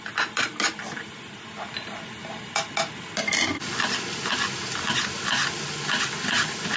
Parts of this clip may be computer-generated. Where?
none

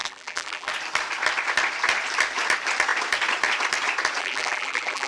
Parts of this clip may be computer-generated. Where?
0.0-0.7; 4.2-5.1